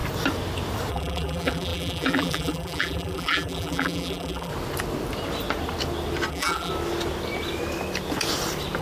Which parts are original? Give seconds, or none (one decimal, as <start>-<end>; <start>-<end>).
0.0-0.9; 4.5-6.3; 6.7-8.8